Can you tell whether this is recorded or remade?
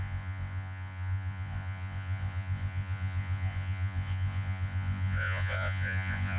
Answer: remade